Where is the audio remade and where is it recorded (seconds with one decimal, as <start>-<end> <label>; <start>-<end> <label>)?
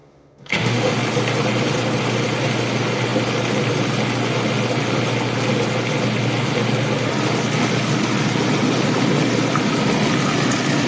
0.0-0.9 remade; 0.9-10.9 recorded